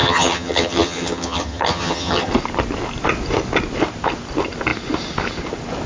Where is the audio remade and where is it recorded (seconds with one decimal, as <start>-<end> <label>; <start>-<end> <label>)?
0.0-2.3 remade; 2.3-5.9 recorded

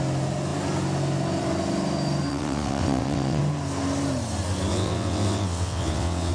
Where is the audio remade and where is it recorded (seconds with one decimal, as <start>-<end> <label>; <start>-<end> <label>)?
0.0-2.3 recorded; 2.3-3.4 remade; 3.4-4.7 recorded; 4.7-6.3 remade

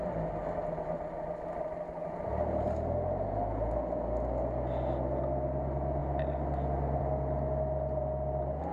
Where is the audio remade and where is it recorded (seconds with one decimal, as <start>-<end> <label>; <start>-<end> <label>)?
0.0-8.7 recorded

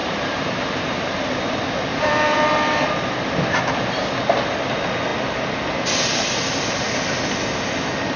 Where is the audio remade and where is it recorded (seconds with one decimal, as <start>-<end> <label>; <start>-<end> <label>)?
0.0-1.4 remade; 1.4-1.9 recorded; 1.9-2.9 remade; 2.9-8.2 recorded

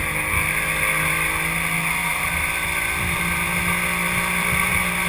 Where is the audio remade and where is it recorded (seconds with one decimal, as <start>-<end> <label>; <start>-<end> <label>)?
0.0-2.0 recorded; 2.0-2.5 remade; 2.5-5.1 recorded

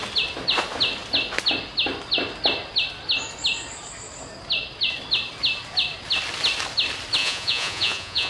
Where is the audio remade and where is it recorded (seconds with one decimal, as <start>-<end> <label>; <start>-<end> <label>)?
0.0-7.2 recorded; 7.2-8.3 remade